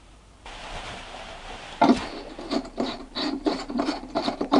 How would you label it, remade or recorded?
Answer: remade